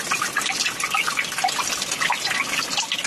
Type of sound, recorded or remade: recorded